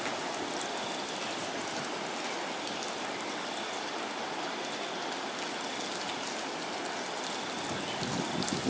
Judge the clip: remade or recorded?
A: recorded